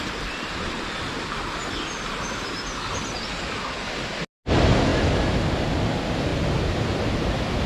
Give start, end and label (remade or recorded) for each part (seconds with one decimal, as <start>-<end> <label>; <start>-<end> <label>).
0.0-6.3 recorded; 6.3-7.7 remade